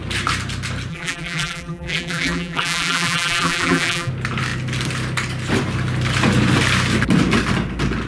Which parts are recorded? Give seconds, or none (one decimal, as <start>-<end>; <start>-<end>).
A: 0.0-0.9; 4.1-8.1